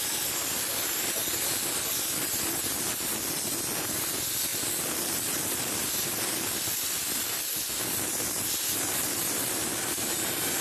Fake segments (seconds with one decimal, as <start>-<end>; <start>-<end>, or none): none